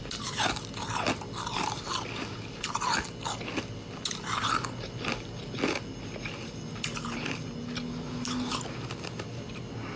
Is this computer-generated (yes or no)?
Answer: no